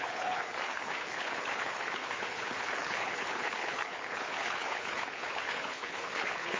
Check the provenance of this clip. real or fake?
fake